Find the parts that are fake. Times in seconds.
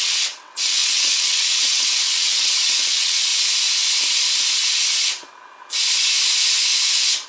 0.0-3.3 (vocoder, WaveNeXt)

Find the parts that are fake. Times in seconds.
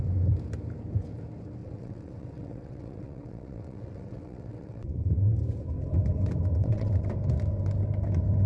1.6-5.3 (vocoder, WaveNeXt); 6.5-7.1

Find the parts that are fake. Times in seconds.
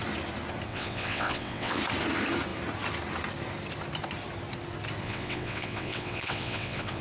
0.7-1.8 (vocoder, WaveNeXt); 5.0-7.0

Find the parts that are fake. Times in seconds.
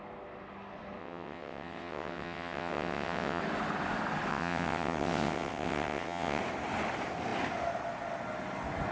1.0-3.4 (vocoder, WaveNeXt); 4.3-6.4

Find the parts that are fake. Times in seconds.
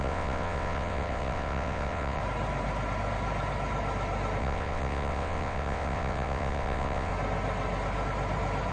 0.0-2.2 (vocoder, WaveNeXt); 4.4-7.1